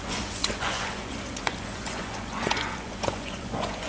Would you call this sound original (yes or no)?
no